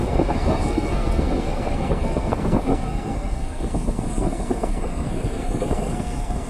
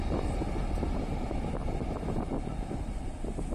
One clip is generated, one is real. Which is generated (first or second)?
first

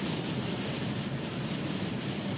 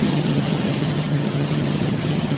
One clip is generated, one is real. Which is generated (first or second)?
second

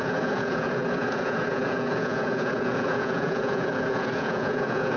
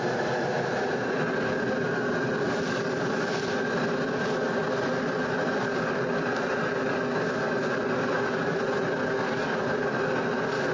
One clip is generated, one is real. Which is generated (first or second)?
first